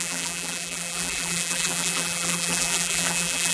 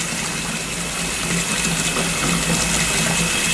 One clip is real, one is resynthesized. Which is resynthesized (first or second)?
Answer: first